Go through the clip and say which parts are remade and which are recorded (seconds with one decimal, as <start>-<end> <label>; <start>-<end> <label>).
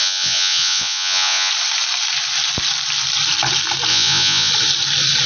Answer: 0.0-1.5 remade; 1.5-3.9 recorded; 3.9-4.5 remade; 4.5-5.3 recorded